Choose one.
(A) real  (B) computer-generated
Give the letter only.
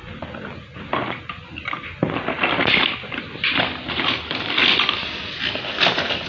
A